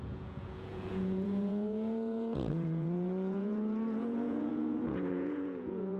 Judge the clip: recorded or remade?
remade